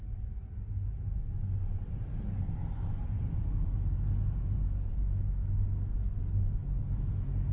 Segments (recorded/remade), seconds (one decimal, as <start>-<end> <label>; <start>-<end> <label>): 0.0-7.5 recorded